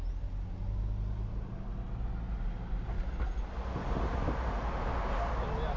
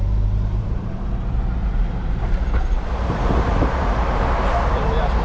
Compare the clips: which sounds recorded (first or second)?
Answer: first